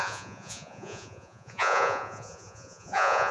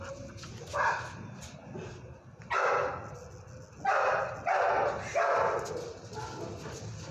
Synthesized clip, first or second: first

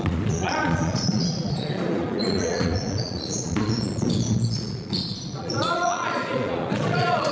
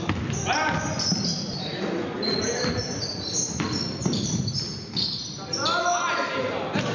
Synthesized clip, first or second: first